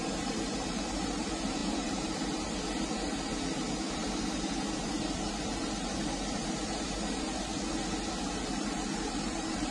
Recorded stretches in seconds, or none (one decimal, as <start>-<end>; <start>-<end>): 7.5-8.2